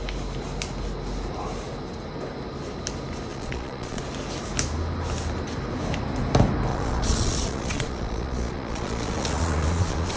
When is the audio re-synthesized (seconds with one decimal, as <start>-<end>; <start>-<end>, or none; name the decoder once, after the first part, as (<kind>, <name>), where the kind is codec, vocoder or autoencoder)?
3.3-4.0 (vocoder, Vocos); 6.7-10.2